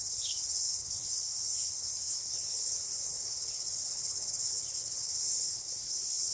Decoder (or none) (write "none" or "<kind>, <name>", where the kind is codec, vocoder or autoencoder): codec, HILCodec